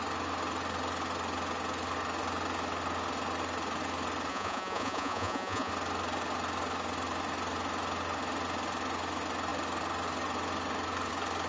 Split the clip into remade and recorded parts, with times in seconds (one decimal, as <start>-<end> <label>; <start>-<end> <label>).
0.0-4.3 recorded; 4.3-5.7 remade; 5.7-11.5 recorded